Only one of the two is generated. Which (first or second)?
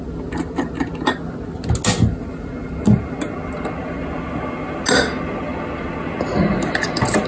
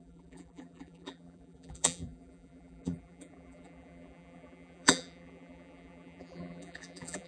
second